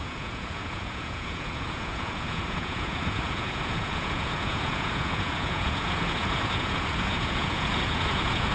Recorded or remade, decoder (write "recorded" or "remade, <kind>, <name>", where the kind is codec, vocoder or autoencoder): remade, vocoder, Vocos